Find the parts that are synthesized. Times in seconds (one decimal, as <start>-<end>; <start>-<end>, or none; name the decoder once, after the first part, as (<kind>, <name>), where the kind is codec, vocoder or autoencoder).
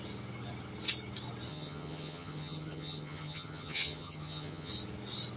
1.5-4.7 (vocoder, HiFi-GAN)